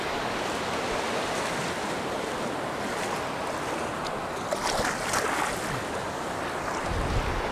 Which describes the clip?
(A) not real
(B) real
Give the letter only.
B